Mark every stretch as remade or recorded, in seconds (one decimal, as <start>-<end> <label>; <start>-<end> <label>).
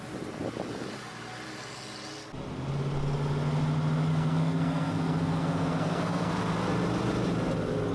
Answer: 0.0-4.1 recorded; 4.1-6.3 remade; 6.3-7.9 recorded